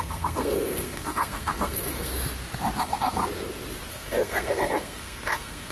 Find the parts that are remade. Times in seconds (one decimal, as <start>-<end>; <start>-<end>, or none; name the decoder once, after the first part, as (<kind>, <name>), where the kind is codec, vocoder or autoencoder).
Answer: 0.0-2.1 (codec, SNAC); 2.8-3.2; 3.9-5.7